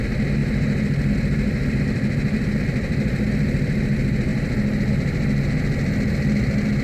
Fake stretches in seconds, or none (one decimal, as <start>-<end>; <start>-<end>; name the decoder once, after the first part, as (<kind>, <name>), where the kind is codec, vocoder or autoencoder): none